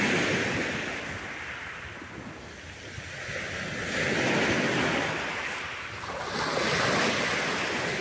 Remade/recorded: recorded